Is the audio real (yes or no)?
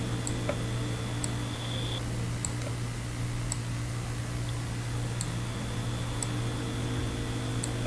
yes